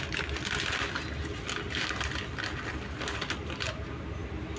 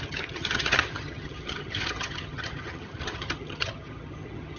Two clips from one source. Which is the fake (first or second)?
second